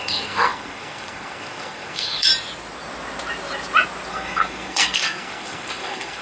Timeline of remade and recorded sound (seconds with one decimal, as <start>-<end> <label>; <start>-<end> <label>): 0.0-2.3 remade; 2.3-4.1 recorded; 4.1-6.2 remade